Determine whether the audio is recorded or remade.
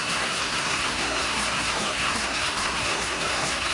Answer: remade